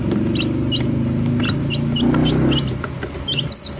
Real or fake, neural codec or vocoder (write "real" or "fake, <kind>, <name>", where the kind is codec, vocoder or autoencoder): real